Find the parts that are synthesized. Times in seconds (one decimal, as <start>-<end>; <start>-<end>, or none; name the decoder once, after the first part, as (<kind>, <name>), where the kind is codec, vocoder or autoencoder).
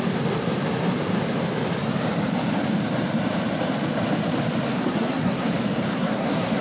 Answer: 4.7-5.5 (codec, SNAC); 5.9-6.6